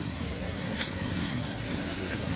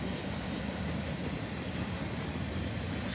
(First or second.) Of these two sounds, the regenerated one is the first